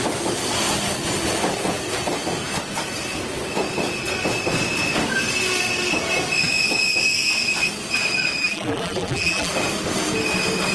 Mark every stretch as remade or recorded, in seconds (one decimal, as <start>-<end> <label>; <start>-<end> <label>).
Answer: 0.0-8.4 recorded; 8.4-9.5 remade; 9.5-10.7 recorded